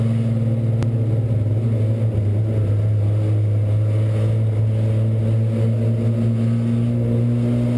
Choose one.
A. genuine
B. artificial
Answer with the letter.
A